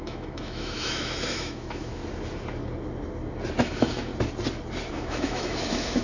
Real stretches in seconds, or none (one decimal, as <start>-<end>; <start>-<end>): 2.0-3.6; 4.1-4.9